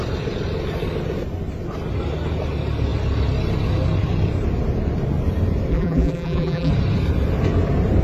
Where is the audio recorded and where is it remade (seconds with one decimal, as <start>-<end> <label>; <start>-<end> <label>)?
0.0-5.7 recorded; 5.7-6.7 remade; 6.7-8.0 recorded